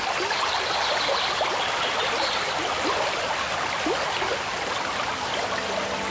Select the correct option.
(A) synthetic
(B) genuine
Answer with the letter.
B